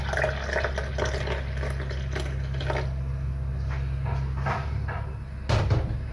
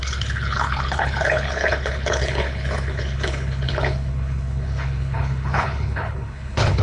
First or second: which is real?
first